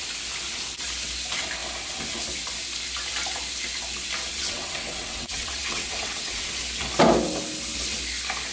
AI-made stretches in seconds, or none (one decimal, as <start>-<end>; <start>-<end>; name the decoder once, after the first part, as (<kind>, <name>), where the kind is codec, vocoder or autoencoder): 4.3-6.6 (vocoder, WaveNeXt)